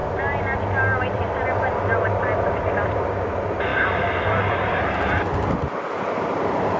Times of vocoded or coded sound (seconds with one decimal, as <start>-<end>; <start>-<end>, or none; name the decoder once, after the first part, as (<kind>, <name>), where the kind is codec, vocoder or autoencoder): none